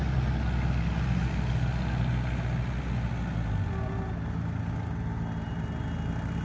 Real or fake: real